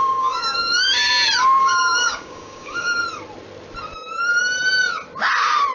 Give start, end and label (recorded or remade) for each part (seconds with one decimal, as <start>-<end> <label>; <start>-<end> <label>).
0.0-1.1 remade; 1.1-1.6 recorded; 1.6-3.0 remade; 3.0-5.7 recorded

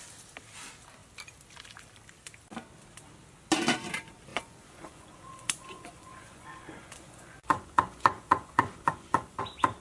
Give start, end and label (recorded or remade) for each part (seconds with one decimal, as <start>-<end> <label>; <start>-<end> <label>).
0.0-4.3 recorded; 4.3-9.4 remade; 9.4-9.8 recorded

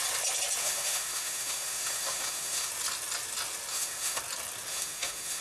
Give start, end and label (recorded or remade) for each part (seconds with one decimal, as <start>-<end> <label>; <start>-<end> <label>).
0.0-0.6 recorded; 0.6-2.7 remade; 2.7-3.7 recorded; 3.7-4.2 remade; 4.2-4.7 recorded; 4.7-5.4 remade

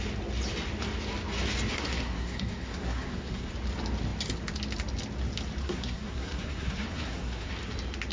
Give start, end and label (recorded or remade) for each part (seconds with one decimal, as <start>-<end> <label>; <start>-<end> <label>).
0.0-1.7 recorded; 1.7-3.5 remade; 3.5-5.6 recorded; 5.6-7.5 remade; 7.5-8.1 recorded

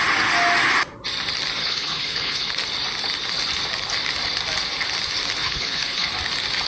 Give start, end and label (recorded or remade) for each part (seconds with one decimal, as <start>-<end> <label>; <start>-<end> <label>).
0.0-1.6 recorded; 1.6-2.5 remade; 2.5-5.4 recorded; 5.4-6.1 remade; 6.1-6.7 recorded

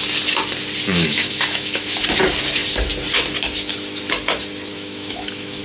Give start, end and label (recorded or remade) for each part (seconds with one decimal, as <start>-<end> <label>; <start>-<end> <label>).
0.0-0.9 recorded; 0.9-2.0 remade; 2.0-4.7 recorded; 4.7-5.6 remade

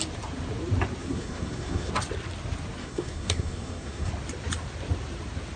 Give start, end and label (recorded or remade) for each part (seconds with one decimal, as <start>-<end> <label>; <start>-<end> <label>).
0.0-1.0 recorded; 1.0-1.9 remade; 1.9-2.8 recorded; 2.8-4.1 remade; 4.1-5.6 recorded

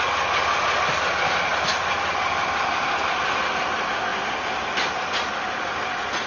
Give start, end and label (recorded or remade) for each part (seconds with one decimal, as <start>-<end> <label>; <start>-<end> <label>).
0.0-6.3 recorded